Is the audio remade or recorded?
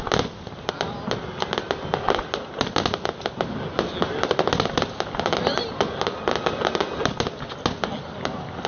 recorded